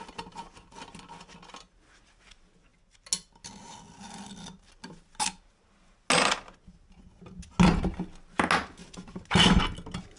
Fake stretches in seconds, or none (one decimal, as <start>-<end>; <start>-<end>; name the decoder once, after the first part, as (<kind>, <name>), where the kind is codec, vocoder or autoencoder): none